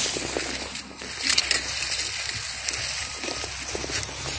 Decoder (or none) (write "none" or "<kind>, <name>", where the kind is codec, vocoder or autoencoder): none